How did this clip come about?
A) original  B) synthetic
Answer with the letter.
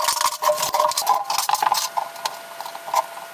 A